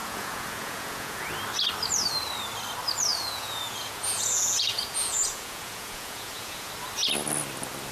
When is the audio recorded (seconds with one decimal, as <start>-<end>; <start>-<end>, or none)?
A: 1.3-3.1; 6.7-7.9

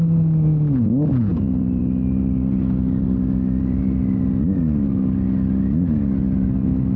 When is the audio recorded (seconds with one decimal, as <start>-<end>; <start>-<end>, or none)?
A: 0.0-1.3; 3.8-7.0